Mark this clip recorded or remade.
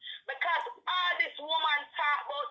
recorded